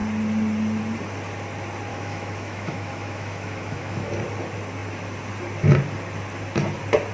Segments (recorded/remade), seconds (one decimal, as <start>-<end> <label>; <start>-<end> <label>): 0.0-1.9 recorded; 1.9-4.1 remade; 4.1-7.1 recorded